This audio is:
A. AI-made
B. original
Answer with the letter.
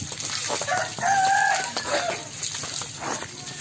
B